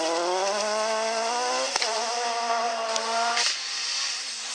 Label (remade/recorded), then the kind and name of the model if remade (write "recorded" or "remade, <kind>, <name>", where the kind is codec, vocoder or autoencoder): recorded